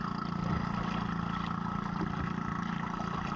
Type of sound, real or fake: real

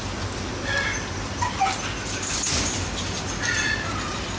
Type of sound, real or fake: real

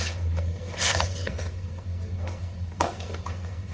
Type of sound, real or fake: fake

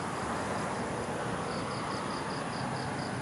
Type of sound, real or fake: real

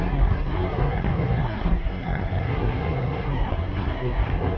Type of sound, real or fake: fake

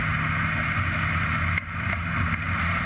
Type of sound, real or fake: real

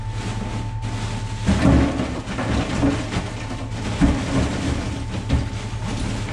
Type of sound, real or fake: real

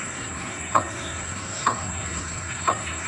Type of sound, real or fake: fake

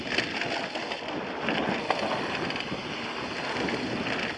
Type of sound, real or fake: real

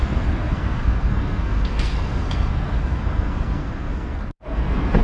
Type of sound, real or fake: fake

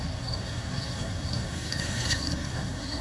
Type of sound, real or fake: fake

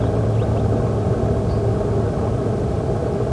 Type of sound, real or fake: real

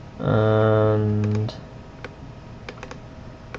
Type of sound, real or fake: real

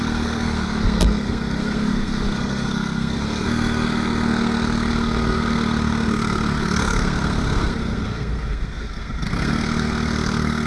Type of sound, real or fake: fake